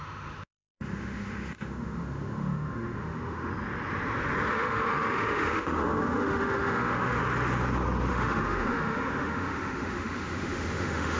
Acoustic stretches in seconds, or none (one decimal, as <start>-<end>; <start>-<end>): 3.5-4.5; 7.2-8.1